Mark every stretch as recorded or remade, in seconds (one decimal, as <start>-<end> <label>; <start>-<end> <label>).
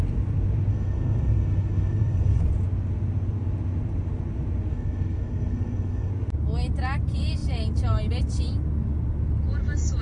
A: 0.0-0.7 recorded; 0.7-2.4 remade; 2.4-4.7 recorded; 4.7-6.1 remade; 6.1-10.0 recorded